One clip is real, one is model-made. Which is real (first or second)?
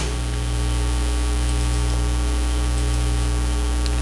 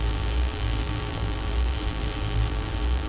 first